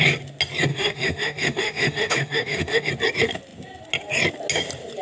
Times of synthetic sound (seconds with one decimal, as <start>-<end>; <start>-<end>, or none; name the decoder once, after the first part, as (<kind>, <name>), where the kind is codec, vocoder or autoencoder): 0.7-2.9 (autoencoder, DAC-VAE)